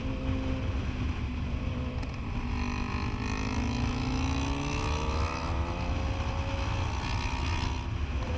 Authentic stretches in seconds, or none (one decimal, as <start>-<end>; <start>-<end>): 0.0-8.4